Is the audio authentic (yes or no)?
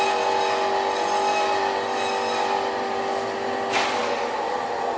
yes